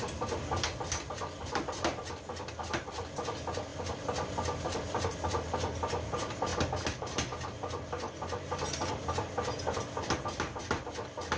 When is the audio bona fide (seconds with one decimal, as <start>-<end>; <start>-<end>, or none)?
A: 0.0-11.4